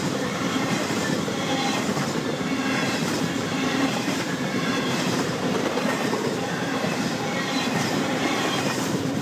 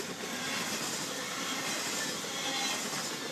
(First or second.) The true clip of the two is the second